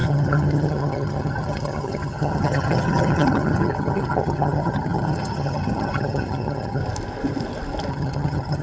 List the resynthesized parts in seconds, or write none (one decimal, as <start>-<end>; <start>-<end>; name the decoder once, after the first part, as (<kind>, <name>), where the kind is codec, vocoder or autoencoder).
0.0-6.8 (vocoder, HiFi-GAN); 7.9-8.6